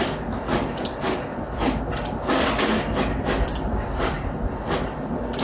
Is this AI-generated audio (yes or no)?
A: no